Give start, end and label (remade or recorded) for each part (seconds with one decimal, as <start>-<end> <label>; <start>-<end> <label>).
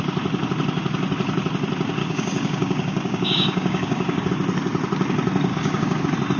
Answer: 0.0-2.0 recorded; 2.0-4.3 remade; 4.3-5.5 recorded; 5.5-6.0 remade; 6.0-6.4 recorded